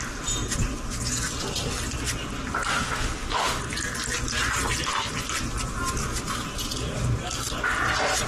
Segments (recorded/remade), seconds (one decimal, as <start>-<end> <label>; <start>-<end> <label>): 0.0-2.7 recorded; 2.7-3.6 remade; 3.6-8.3 recorded